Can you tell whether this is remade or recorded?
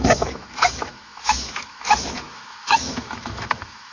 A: remade